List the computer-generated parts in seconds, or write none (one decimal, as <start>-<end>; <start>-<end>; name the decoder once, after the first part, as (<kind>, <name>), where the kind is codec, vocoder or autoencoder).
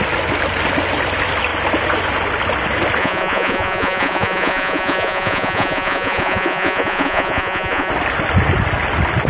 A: 3.0-7.9 (vocoder, Vocos)